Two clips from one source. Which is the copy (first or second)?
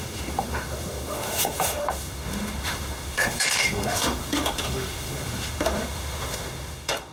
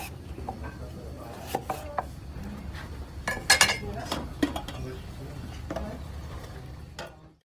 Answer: first